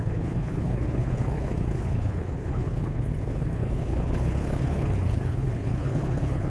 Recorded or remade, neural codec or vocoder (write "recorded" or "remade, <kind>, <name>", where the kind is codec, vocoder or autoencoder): remade, codec, HILCodec